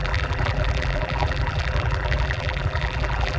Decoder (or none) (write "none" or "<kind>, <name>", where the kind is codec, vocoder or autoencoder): vocoder, BigVGAN v2